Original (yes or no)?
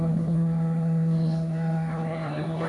no